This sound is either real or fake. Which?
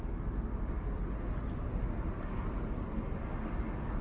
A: real